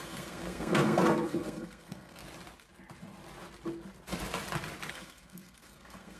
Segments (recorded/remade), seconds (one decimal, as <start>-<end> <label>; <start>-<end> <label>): 0.0-2.2 remade; 2.2-4.9 recorded; 4.9-6.2 remade